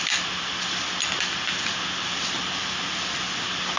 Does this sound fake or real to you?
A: real